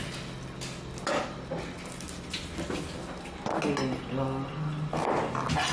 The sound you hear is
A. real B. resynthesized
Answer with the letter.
A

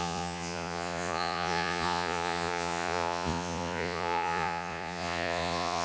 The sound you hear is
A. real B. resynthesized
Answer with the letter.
B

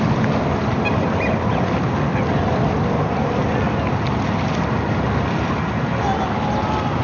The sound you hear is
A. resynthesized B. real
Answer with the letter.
B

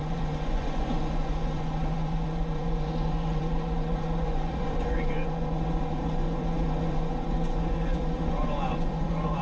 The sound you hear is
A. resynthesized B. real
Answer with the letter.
A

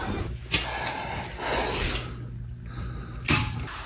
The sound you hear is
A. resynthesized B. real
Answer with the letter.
B